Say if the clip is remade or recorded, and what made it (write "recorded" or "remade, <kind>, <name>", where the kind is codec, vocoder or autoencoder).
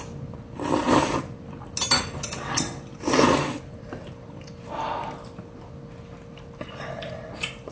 recorded